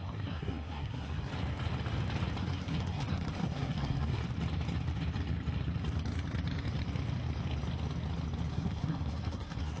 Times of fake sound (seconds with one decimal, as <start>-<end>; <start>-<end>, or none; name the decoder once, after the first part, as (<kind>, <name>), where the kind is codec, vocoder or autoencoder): 0.0-1.3 (codec, SNAC); 2.4-4.2; 8.5-9.8